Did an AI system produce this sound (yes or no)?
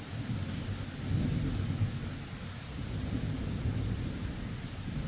no